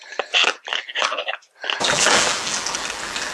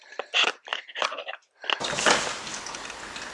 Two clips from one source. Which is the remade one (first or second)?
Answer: first